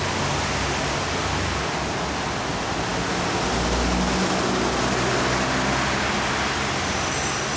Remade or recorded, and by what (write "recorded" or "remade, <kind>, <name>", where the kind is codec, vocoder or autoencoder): recorded